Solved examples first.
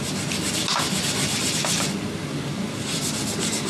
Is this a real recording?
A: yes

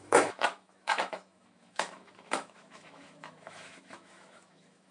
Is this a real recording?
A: no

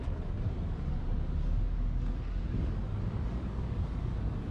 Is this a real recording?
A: no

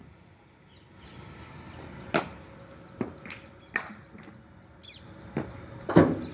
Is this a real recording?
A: yes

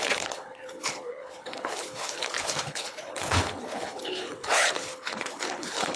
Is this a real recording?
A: no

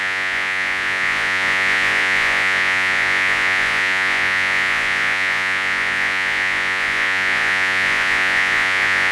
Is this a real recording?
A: no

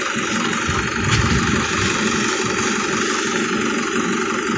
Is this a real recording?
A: yes